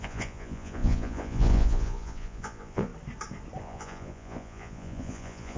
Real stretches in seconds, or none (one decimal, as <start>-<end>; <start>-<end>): 2.9-3.6